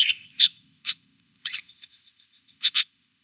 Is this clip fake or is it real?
fake